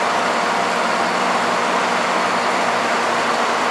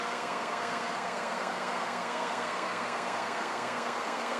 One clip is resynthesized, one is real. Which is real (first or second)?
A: first